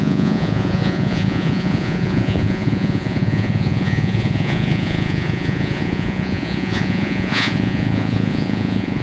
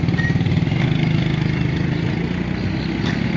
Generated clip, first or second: first